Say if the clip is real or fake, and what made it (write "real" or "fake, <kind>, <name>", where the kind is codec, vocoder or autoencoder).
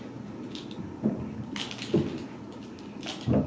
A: real